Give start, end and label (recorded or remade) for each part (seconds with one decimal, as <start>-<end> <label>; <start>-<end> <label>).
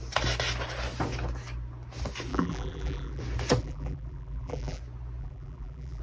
0.0-2.3 recorded; 2.3-3.2 remade; 3.2-3.6 recorded; 3.6-4.8 remade; 4.8-5.2 recorded; 5.2-6.0 remade